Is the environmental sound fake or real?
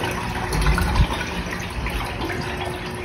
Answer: real